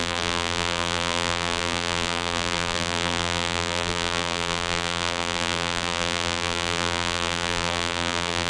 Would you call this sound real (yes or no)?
no